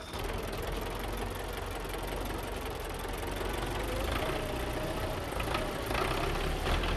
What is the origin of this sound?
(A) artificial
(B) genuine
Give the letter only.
B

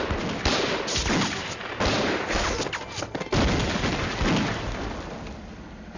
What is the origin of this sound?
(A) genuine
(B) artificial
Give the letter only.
A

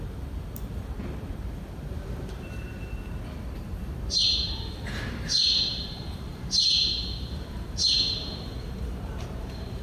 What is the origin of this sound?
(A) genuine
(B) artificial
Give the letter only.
B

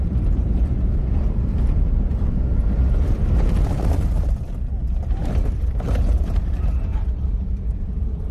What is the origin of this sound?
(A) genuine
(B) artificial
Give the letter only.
B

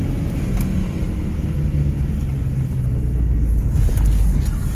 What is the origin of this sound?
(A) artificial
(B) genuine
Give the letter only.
B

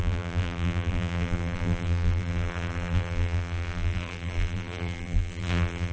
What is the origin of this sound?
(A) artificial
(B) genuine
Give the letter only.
A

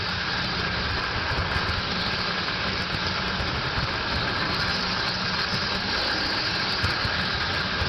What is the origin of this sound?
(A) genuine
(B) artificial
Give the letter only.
A